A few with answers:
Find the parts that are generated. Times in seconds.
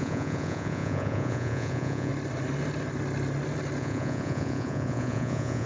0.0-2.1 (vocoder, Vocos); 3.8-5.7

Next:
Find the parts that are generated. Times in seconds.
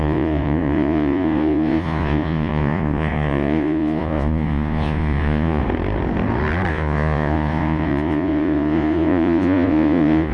0.0-5.6 (vocoder, Vocos); 6.7-10.3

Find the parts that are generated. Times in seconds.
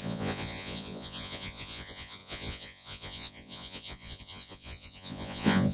0.0-5.7 (vocoder, Vocos)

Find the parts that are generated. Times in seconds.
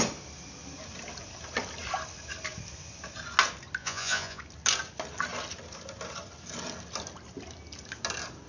3.8-4.4 (vocoder, Vocos)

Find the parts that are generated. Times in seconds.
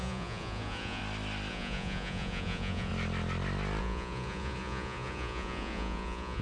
0.0-1.0 (vocoder, Vocos); 1.5-2.9; 3.8-6.4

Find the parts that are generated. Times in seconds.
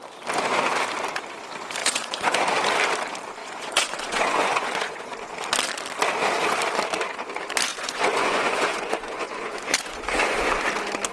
1.8-2.4 (vocoder, Vocos); 3.4-5.3; 7.7-10.6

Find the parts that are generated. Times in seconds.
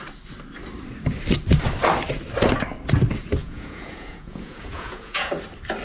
3.4-5.3 (vocoder, Vocos)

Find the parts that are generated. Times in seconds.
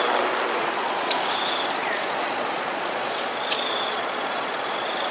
0.6-1.2 (vocoder, Vocos); 1.8-5.1